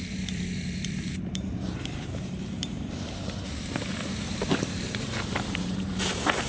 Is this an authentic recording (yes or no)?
no